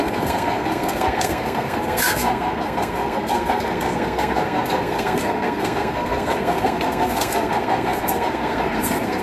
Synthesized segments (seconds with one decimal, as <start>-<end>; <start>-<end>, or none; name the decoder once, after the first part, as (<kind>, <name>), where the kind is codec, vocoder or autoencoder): 0.0-9.2 (codec, SNAC)

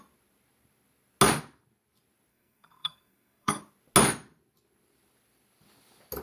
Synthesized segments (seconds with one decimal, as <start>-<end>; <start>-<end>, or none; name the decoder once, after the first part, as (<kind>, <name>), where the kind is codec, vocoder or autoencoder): 2.3-3.6 (codec, SNAC)